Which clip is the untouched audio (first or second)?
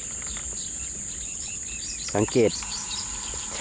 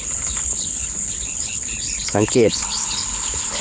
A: first